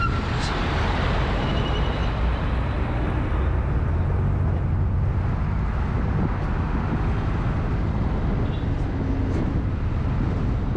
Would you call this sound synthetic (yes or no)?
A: no